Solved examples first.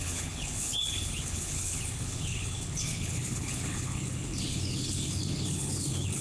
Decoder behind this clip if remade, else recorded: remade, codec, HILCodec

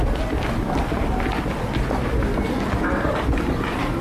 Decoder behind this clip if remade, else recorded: recorded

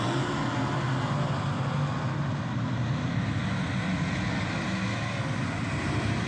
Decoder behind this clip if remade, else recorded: recorded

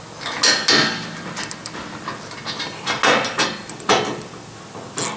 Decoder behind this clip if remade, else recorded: recorded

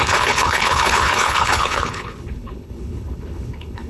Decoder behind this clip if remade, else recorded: remade, codec, HILCodec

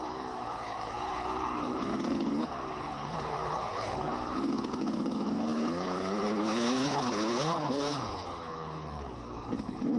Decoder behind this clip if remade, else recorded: remade, codec, HILCodec